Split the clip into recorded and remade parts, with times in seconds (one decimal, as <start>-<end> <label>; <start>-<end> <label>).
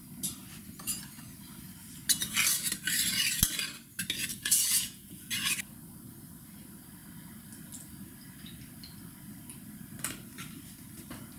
0.0-4.3 recorded; 4.3-5.3 remade; 5.3-11.4 recorded